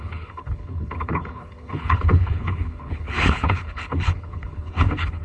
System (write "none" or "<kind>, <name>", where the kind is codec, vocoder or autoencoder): codec, HILCodec